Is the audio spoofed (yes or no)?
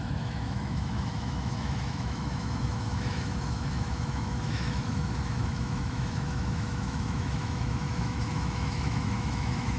yes